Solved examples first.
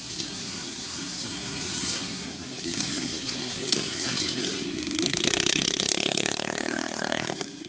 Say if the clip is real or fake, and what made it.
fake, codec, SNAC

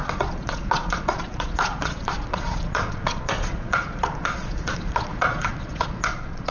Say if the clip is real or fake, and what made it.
fake, vocoder, Vocos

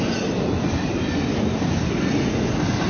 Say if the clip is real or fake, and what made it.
real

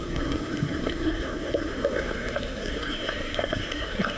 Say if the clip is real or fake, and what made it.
fake, codec, SNAC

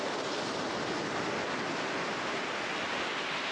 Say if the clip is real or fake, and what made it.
real